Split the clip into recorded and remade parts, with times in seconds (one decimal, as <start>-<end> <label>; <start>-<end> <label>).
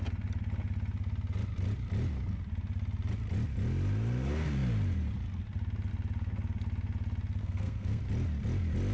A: 0.0-7.4 recorded; 7.4-8.0 remade; 8.0-8.9 recorded